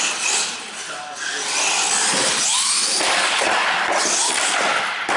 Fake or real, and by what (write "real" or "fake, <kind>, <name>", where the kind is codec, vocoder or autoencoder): real